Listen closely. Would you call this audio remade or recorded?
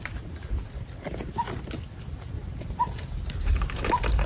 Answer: recorded